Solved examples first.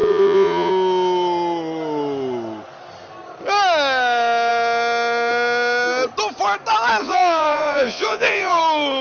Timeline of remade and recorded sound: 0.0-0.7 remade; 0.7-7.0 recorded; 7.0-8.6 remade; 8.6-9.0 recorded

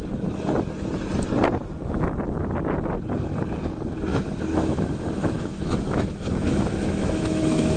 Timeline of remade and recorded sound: 0.0-4.1 recorded; 4.1-7.8 remade

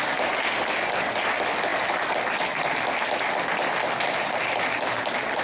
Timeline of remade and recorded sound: 0.0-5.4 recorded

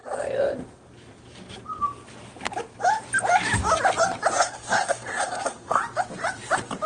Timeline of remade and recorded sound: 0.0-4.3 recorded; 4.3-5.8 remade; 5.8-6.9 recorded